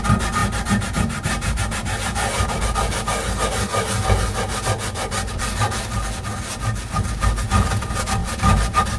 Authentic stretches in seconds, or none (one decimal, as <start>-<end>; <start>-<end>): 0.0-0.4; 2.5-9.0